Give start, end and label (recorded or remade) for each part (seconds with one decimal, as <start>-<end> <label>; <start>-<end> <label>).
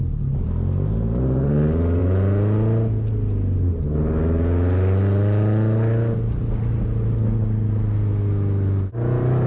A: 0.0-9.5 recorded